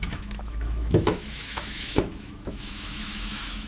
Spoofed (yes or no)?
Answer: yes